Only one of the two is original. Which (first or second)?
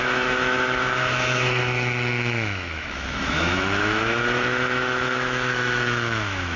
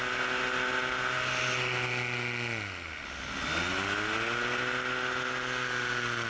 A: second